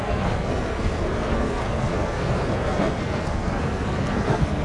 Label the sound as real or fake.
fake